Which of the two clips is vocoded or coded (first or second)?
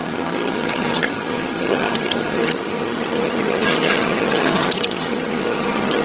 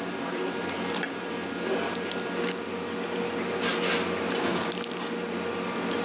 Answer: first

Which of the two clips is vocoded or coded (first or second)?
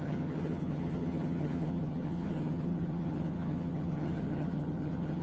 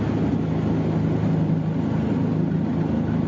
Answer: first